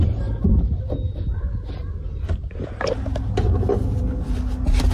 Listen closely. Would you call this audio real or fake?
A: real